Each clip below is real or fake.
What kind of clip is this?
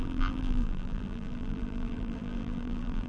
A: fake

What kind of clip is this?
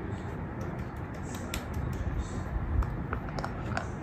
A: real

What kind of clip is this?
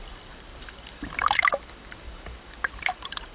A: fake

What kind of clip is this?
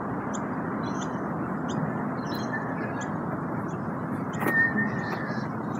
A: real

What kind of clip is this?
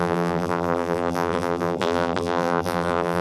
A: fake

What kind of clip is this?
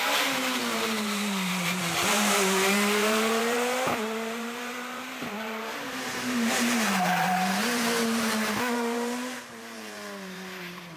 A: fake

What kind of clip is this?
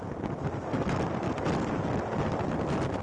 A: fake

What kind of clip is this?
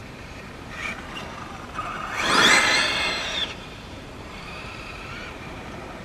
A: fake